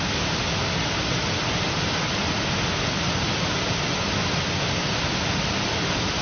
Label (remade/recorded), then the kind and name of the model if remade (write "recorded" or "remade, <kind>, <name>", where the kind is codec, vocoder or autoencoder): recorded